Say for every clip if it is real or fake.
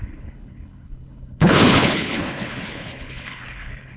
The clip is fake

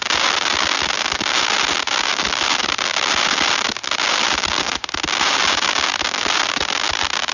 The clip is real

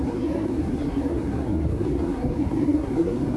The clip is fake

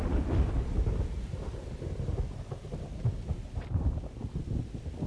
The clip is real